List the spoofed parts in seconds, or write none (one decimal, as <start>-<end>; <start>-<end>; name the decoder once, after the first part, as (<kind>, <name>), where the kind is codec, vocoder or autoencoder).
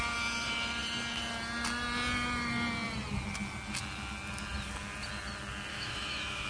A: 5.7-6.5 (autoencoder, DAC-VAE)